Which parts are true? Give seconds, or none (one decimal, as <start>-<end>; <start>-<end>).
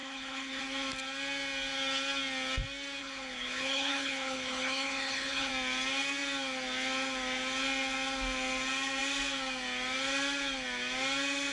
0.6-3.0; 5.5-11.5